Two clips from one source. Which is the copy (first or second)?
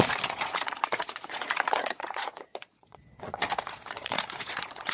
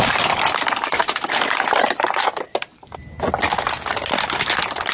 first